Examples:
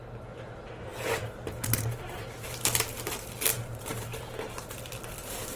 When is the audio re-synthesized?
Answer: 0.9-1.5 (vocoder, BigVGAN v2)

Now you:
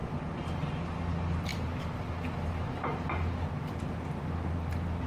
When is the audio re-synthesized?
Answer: 0.0-5.1 (vocoder, BigVGAN v2)

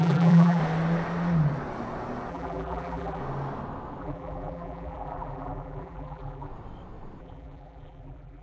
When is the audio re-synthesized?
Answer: 0.0-0.6 (vocoder, BigVGAN v2); 2.3-3.2; 4.0-6.5; 7.2-8.4

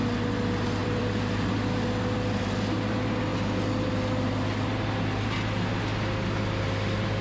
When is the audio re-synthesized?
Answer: 0.8-1.5 (vocoder, BigVGAN v2)

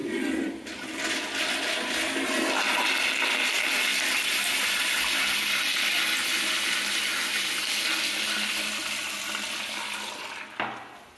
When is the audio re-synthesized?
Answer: 0.0-1.7 (vocoder, BigVGAN v2)